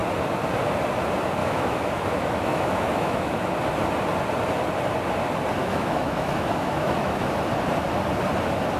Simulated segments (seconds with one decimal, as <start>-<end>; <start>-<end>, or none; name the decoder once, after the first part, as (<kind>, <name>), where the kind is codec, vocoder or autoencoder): 1.4-3.5 (autoencoder, DAC-VAE); 5.6-7.3